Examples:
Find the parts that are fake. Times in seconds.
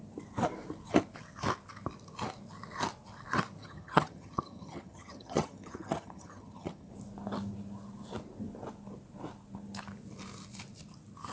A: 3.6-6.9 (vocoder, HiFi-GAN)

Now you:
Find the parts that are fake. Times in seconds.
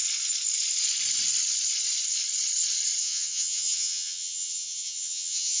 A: 3.0-5.6 (vocoder, HiFi-GAN)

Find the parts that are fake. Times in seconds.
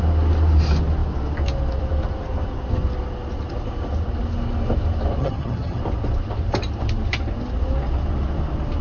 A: 5.2-5.8 (vocoder, HiFi-GAN)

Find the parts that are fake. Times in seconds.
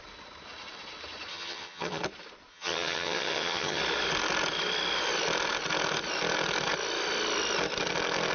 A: 1.3-2.0 (vocoder, HiFi-GAN); 2.5-3.8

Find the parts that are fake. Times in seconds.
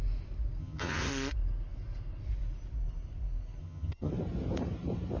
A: 0.6-1.1 (vocoder, HiFi-GAN); 3.6-4.1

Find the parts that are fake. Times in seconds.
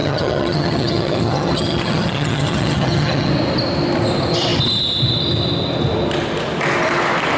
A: 0.0-3.3 (vocoder, HiFi-GAN)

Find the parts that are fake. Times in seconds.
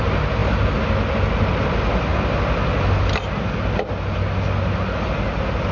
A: none